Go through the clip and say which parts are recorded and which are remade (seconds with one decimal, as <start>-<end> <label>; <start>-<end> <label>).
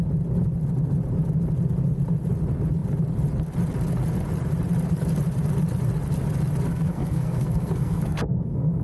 0.0-6.7 recorded; 6.7-8.8 remade